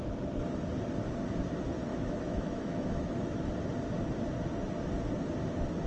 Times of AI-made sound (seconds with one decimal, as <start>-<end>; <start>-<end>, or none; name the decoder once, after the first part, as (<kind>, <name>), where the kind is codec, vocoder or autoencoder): 1.9-3.5 (autoencoder, DAC-VAE)